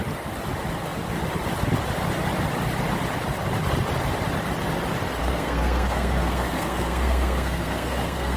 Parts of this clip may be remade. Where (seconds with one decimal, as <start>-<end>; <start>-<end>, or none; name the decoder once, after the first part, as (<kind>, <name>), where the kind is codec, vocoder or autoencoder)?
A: 5.2-8.4 (codec, SNAC)